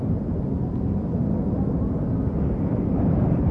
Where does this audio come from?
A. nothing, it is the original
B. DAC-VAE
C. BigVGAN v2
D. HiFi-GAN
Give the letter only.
A